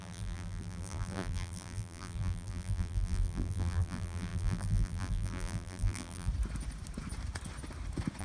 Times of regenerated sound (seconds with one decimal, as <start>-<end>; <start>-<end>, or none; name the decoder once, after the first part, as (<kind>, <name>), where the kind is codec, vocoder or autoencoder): 0.0-6.3 (vocoder, BigVGAN v2)